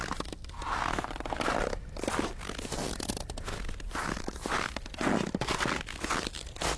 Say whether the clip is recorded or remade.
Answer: recorded